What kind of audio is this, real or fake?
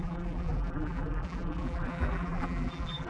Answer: fake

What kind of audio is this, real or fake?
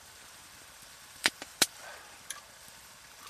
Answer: fake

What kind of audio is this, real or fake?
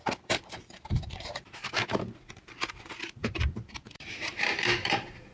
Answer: fake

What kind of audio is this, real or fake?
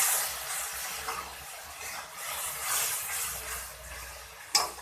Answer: real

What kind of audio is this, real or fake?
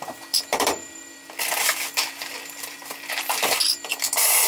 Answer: fake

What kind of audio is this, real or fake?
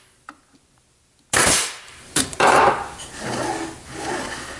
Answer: real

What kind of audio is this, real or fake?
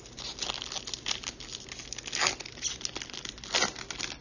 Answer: real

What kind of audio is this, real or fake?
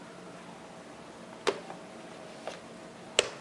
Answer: real